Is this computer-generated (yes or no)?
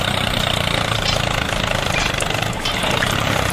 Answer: yes